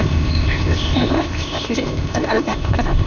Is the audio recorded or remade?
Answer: remade